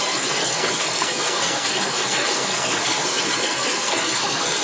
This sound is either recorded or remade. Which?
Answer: remade